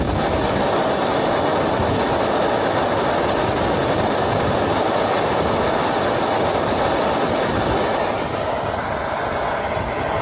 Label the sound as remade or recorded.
recorded